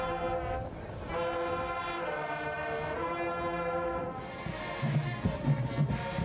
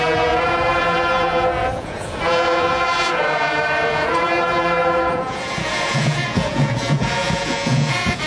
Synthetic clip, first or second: second